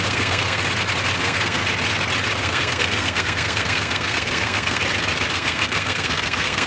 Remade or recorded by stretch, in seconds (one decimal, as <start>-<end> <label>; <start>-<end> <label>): 0.0-0.6 remade; 0.6-1.2 recorded; 1.2-1.6 remade; 1.6-2.4 recorded; 2.4-4.8 remade; 4.8-5.3 recorded; 5.3-6.7 remade